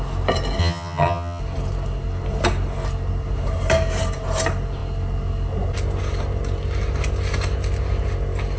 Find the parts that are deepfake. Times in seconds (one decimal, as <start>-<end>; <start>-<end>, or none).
0.6-1.4